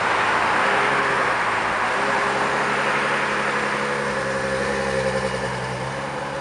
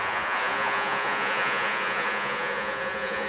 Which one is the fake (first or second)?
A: second